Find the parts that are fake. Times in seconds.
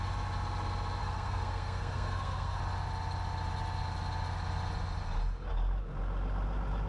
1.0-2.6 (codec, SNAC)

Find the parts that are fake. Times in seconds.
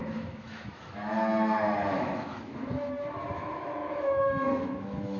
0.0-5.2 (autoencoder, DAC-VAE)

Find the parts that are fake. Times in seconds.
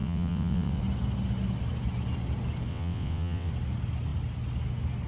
0.0-0.8 (vocoder, WaveNeXt); 2.7-3.5